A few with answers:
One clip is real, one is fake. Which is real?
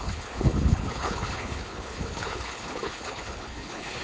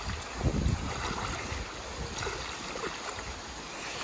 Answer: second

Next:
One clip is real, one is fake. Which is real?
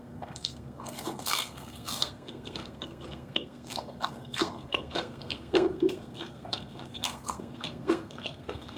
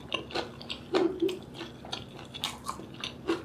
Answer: second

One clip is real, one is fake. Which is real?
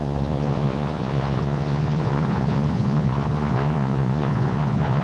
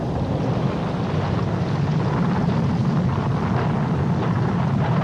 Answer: second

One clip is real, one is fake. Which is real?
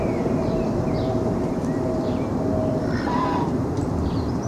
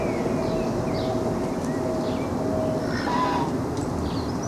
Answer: second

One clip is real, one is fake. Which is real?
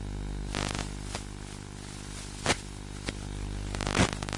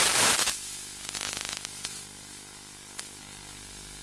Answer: first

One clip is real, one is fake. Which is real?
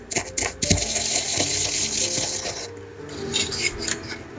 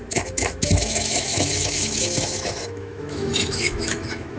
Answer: first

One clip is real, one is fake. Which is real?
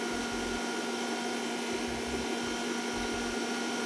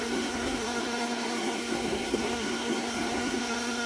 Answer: first